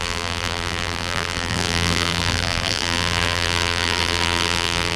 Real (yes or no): no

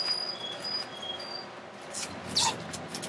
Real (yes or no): yes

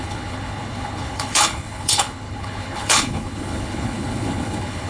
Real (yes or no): no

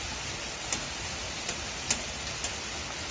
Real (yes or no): no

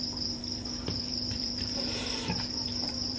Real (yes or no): no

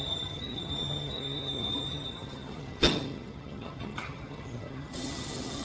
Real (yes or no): no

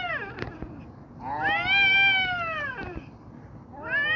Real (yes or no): yes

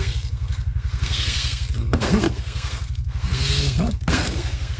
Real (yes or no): no